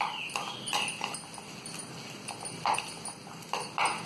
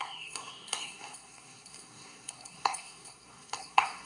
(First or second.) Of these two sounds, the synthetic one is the second